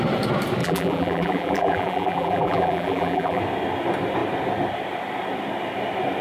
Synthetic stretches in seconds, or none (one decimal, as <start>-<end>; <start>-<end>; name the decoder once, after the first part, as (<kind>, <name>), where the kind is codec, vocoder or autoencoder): 0.6-3.4 (vocoder, BigVGAN v2)